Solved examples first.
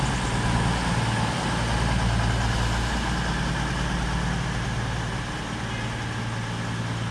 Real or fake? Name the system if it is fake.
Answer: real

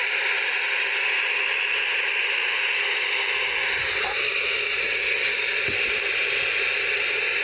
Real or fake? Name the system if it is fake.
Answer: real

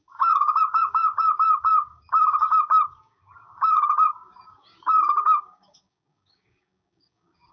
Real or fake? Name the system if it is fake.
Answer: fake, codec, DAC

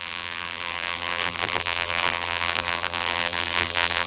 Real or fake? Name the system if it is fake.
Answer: fake, vocoder, BigVGAN v2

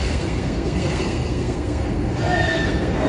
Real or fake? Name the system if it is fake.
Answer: fake, codec, SNAC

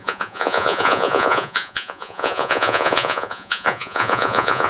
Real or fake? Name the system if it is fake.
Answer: fake, vocoder, Vocos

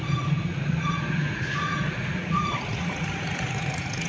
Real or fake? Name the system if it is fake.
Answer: fake, vocoder, Vocos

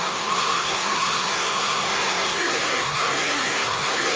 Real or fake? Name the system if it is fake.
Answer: fake, codec, SNAC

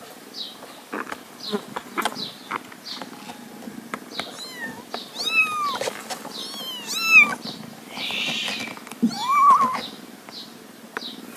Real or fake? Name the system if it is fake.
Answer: real